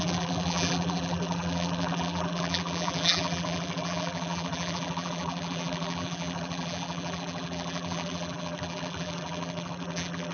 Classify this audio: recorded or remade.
remade